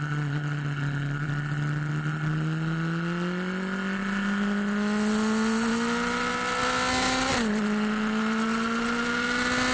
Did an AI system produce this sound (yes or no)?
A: no